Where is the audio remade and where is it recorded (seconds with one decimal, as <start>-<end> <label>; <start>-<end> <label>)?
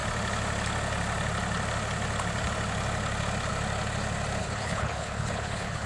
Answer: 0.0-4.4 recorded; 4.4-5.9 remade